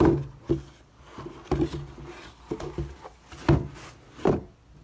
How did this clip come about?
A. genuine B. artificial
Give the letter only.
A